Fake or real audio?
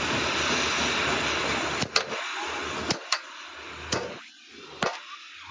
real